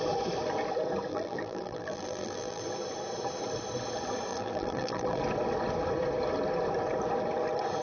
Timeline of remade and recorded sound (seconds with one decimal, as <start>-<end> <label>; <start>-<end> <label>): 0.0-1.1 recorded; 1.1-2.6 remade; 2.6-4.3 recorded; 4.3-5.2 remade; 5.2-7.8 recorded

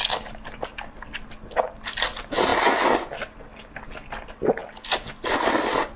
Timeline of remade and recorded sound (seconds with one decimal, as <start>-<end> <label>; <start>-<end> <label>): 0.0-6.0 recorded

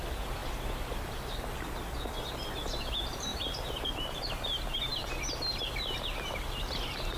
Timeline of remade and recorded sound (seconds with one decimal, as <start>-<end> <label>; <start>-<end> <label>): 0.0-3.3 recorded; 3.3-4.3 remade; 4.3-7.2 recorded